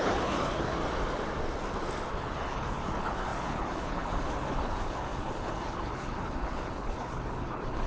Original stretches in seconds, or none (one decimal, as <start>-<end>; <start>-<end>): 0.8-2.1